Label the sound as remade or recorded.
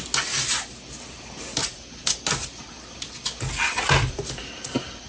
recorded